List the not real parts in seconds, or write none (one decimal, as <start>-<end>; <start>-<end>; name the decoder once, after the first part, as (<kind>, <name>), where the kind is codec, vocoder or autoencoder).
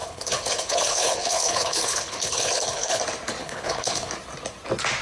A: 0.0-3.0 (codec, HILCodec); 3.4-4.1